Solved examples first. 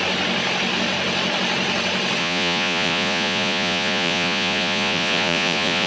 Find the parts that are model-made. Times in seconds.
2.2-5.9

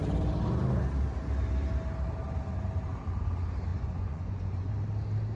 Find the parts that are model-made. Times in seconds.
3.7-4.7

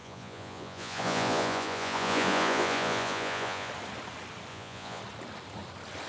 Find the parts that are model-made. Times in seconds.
0.0-3.7; 4.5-5.0

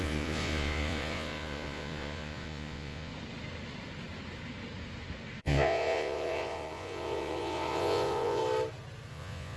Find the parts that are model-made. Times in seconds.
0.0-3.1; 5.4-8.4; 9.1-9.6

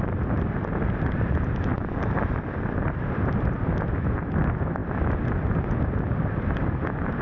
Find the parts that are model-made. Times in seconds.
none

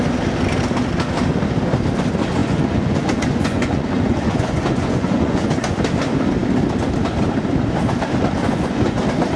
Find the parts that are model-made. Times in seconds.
2.4-5.8; 8.4-9.0

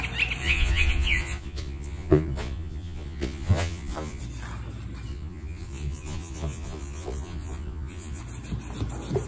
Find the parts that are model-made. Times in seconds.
0.4-4.2; 5.1-8.2